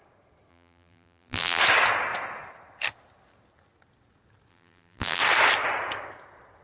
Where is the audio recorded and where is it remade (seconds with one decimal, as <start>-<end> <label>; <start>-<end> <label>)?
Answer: 0.0-0.5 recorded; 0.5-1.6 remade; 1.6-4.5 recorded; 4.5-5.2 remade; 5.2-6.6 recorded